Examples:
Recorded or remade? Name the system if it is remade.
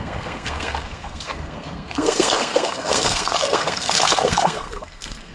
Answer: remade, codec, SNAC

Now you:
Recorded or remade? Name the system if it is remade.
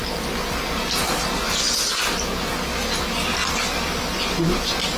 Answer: recorded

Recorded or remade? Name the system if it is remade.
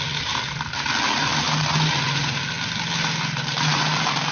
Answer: recorded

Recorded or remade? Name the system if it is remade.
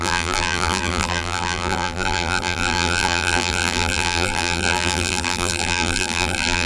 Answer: remade, vocoder, BigVGAN v2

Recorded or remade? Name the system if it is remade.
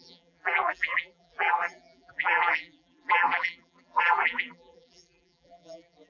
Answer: remade, vocoder, BigVGAN v2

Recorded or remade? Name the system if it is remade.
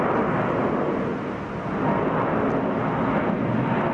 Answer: recorded